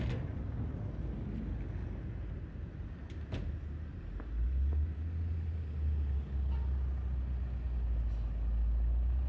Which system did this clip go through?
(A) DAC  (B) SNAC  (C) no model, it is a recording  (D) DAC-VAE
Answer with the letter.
C